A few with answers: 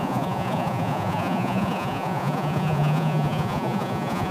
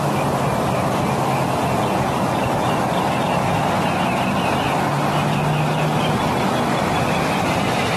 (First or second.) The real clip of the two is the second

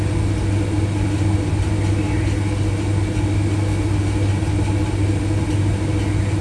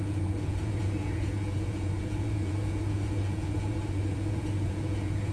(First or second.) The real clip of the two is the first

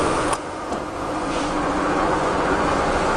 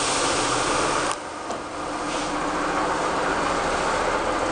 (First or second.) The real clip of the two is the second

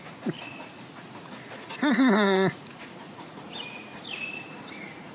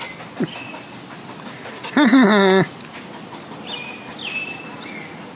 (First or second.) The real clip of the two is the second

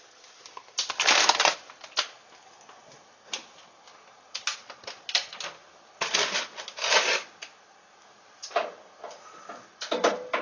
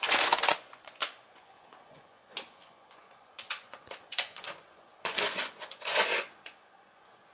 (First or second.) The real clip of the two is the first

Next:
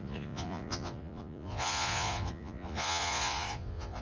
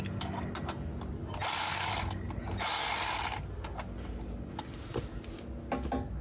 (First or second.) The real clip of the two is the second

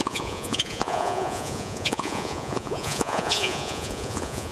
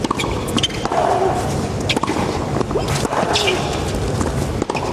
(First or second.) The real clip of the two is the second